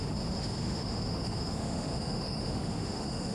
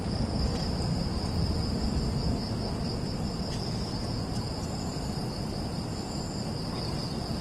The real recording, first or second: second